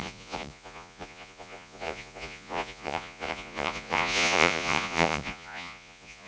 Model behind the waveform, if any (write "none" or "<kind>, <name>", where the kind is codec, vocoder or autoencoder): vocoder, Vocos